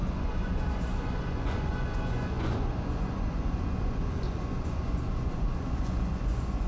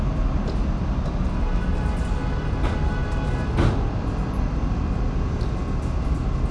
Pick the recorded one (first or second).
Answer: second